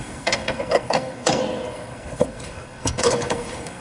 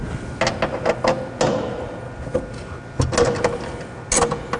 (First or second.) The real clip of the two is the second